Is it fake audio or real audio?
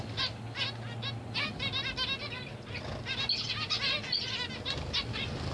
real